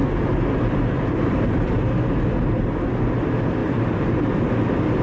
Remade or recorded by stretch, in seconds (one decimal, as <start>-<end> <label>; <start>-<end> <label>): 0.0-1.8 remade; 1.8-3.6 recorded; 3.6-4.6 remade; 4.6-5.0 recorded